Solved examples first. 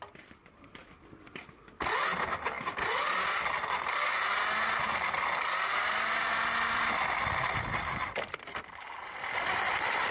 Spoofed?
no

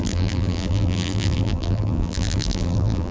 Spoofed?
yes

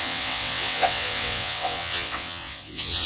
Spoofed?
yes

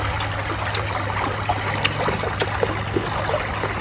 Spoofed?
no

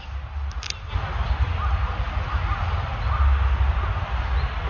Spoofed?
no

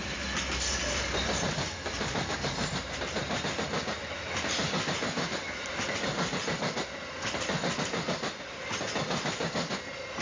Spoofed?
no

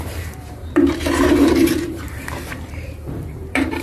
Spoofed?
yes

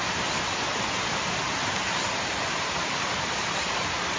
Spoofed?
no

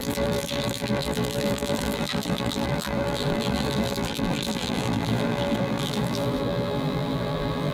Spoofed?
yes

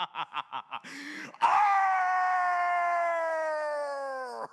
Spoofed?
yes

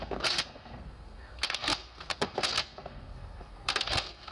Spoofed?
yes